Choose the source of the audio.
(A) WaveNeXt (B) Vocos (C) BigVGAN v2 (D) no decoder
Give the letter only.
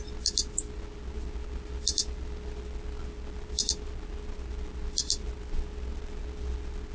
D